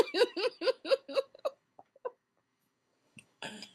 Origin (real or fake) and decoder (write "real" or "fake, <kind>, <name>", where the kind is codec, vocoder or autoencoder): fake, codec, DAC